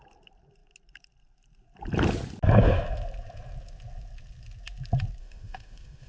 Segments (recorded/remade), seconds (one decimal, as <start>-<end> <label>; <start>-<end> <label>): 0.0-5.2 recorded; 5.2-6.1 remade

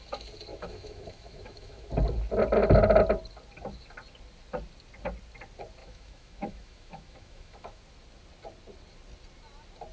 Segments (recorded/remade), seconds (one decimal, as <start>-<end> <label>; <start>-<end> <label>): 0.0-0.5 recorded; 0.5-1.9 remade; 1.9-5.8 recorded; 5.8-7.8 remade; 7.8-9.9 recorded

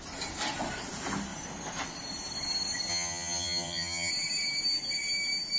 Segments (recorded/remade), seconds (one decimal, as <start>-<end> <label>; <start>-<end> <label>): 0.0-2.9 recorded; 2.9-4.1 remade; 4.1-5.6 recorded

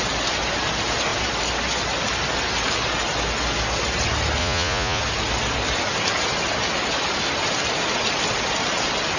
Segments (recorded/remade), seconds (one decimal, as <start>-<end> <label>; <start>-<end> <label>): 0.0-4.4 recorded; 4.4-5.0 remade; 5.0-9.2 recorded